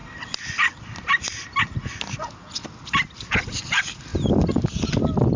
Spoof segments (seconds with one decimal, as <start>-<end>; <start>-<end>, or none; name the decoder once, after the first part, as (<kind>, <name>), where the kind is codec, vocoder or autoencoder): none